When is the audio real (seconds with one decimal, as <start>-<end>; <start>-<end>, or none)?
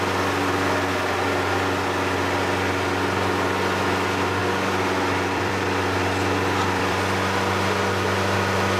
0.0-4.4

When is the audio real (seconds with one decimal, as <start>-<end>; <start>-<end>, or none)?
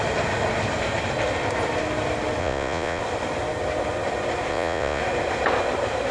0.0-2.4; 3.0-4.5; 5.0-6.1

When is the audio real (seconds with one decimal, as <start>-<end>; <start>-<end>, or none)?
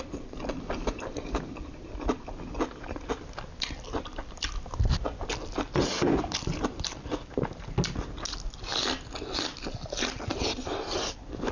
0.0-11.5